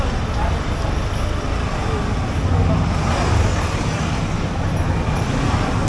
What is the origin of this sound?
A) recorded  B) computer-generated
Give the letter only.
A